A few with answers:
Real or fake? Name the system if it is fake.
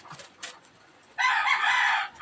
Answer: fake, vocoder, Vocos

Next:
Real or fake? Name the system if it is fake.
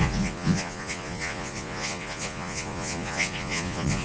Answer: fake, vocoder, Vocos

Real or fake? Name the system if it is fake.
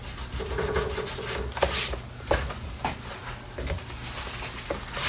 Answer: real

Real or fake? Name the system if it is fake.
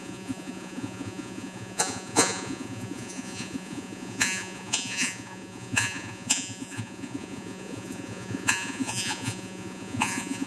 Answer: fake, vocoder, Vocos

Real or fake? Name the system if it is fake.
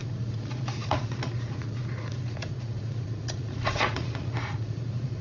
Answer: fake, vocoder, Vocos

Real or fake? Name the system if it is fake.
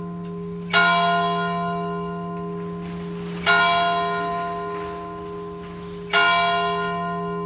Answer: real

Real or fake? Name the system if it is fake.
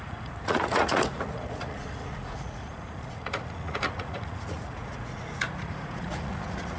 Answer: fake, vocoder, Vocos